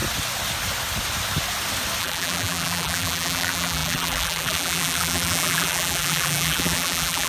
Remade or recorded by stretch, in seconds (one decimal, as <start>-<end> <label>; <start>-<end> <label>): 0.0-2.0 recorded; 2.0-7.3 remade